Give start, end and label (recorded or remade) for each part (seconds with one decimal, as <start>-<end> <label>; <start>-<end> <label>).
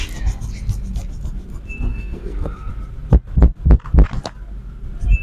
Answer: 0.0-1.9 recorded; 1.9-2.7 remade; 2.7-5.2 recorded